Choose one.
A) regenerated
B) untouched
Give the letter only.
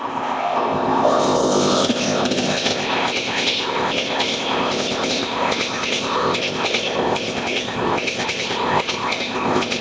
A